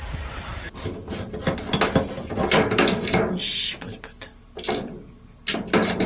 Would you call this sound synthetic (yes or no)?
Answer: no